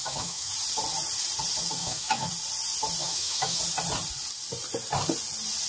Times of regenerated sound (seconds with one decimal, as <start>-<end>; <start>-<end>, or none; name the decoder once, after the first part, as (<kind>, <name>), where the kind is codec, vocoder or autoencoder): 0.0-0.5 (autoencoder, DAC-VAE); 1.8-2.3; 3.0-3.6

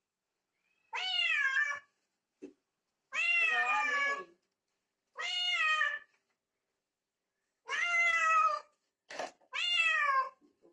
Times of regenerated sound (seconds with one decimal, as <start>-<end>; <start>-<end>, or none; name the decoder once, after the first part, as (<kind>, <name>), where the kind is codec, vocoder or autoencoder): 7.4-9.0 (codec, DAC)

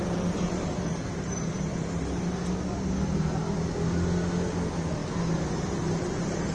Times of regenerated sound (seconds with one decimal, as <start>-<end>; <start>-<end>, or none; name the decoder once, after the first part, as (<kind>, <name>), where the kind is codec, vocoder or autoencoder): none

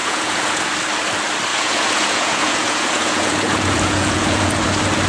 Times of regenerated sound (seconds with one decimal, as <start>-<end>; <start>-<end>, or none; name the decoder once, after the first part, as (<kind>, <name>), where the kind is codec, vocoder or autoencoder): 0.0-0.6 (vocoder, Vocos); 1.5-4.6

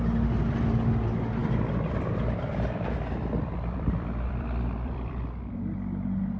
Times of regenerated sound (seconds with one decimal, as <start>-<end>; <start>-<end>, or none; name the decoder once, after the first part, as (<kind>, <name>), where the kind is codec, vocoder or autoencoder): 1.4-5.2 (vocoder, BigVGAN v2)

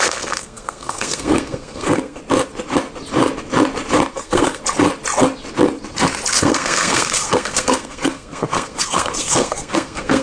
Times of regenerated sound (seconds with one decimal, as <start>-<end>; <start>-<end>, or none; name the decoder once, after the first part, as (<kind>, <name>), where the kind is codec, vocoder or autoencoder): 0.0-2.2 (codec, SNAC); 4.1-4.6; 6.3-10.2

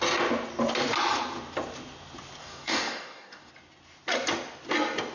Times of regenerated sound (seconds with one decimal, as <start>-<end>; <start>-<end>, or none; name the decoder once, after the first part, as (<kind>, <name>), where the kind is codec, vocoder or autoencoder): 2.4-3.5 (codec, DAC)

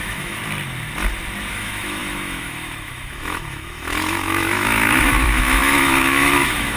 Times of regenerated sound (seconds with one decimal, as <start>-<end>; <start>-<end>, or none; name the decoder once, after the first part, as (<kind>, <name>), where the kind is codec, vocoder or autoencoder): 0.0-0.4 (autoencoder, DAC-VAE); 1.5-6.8